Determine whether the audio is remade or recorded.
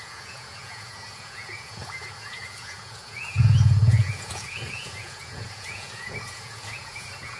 remade